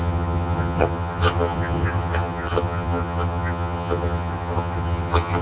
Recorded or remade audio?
remade